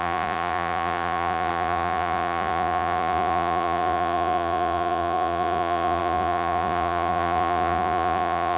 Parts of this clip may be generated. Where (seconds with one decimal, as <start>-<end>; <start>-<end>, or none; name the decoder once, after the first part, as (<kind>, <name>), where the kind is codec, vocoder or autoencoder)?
0.0-8.6 (vocoder, Vocos)